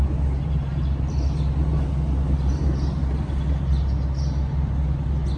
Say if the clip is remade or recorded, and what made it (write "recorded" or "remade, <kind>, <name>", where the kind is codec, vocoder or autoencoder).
recorded